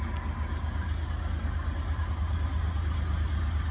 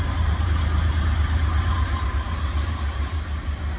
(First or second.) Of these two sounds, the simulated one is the second